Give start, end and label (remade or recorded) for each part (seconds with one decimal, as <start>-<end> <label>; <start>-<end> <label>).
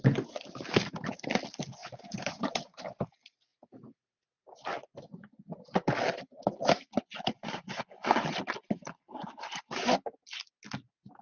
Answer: 0.0-1.8 recorded; 1.8-3.1 remade; 3.1-3.5 recorded; 3.5-4.7 remade; 4.7-11.2 recorded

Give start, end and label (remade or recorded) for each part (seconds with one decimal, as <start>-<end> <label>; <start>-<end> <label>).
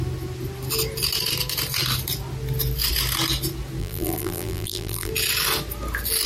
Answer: 0.0-3.8 recorded; 3.8-5.1 remade; 5.1-6.3 recorded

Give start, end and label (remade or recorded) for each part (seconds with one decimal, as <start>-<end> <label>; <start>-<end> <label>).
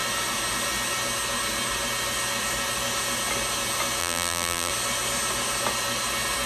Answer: 0.0-4.0 recorded; 4.0-4.7 remade; 4.7-6.5 recorded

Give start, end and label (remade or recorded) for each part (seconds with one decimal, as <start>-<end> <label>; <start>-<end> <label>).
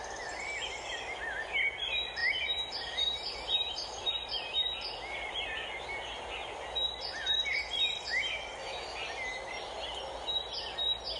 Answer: 0.0-2.2 recorded; 2.2-4.1 remade; 4.1-11.2 recorded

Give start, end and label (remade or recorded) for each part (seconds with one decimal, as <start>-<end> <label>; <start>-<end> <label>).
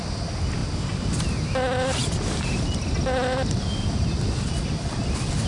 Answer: 0.0-5.5 recorded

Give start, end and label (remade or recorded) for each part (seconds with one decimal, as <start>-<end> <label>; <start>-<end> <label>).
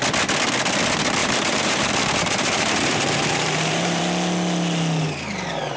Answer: 0.0-1.2 recorded; 1.2-4.0 remade; 4.0-5.8 recorded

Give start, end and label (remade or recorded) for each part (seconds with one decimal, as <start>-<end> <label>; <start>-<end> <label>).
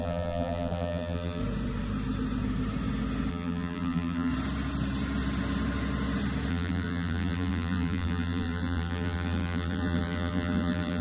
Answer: 0.0-1.4 remade; 1.4-3.3 recorded; 3.3-4.3 remade; 4.3-6.5 recorded; 6.5-11.0 remade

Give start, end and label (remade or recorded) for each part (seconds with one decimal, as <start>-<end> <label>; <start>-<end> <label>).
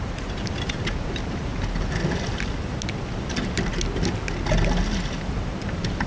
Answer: 0.0-1.5 remade; 1.5-5.2 recorded; 5.2-6.1 remade